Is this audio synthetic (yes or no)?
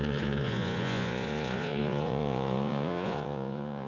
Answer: yes